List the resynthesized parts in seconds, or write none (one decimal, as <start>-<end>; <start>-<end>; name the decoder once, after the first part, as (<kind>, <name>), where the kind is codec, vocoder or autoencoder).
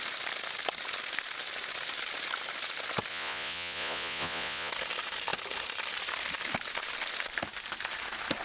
3.1-4.7 (vocoder, Vocos)